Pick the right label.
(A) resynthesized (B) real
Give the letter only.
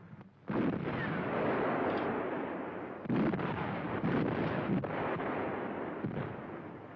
B